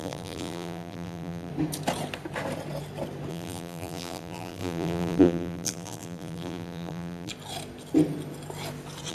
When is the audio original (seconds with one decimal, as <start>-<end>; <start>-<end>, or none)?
1.5-3.3; 7.3-9.1